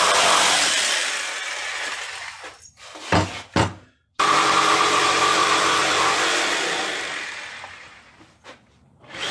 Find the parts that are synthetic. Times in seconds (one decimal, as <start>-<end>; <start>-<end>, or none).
0.0-1.0; 3.4-5.8; 7.5-9.3